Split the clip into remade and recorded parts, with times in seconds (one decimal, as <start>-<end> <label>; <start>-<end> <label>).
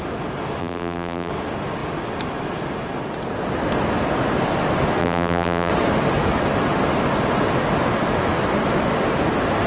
0.0-0.6 recorded; 0.6-1.3 remade; 1.3-5.0 recorded; 5.0-5.7 remade; 5.7-9.7 recorded